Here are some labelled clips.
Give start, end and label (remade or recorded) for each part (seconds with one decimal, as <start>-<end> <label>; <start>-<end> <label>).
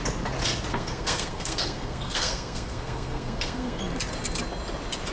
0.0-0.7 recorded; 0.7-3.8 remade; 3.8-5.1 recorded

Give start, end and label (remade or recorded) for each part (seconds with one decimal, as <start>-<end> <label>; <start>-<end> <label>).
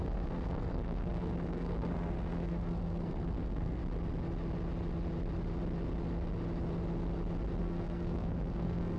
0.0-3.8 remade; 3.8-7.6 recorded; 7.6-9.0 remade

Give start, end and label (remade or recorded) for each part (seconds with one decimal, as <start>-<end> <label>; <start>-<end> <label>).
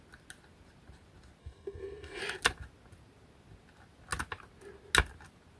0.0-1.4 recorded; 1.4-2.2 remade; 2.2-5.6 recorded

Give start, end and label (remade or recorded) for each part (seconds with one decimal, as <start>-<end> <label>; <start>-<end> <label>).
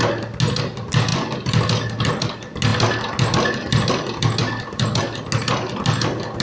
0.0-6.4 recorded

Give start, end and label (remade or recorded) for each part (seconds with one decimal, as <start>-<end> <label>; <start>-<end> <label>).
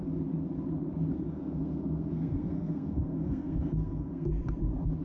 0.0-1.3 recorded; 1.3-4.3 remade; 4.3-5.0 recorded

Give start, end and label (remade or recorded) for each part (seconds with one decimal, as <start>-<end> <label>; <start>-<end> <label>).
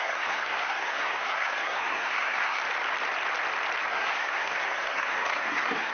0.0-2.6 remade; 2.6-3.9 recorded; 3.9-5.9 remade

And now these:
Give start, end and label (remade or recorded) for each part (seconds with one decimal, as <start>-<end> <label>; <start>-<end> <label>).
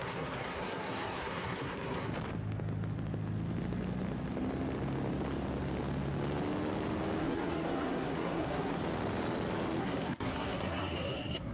0.0-2.1 remade; 2.1-7.2 recorded; 7.2-8.8 remade; 8.8-9.8 recorded; 9.8-11.5 remade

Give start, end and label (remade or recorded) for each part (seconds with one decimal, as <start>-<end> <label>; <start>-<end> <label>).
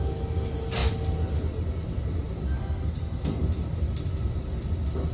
0.0-2.6 recorded; 2.6-3.4 remade; 3.4-5.1 recorded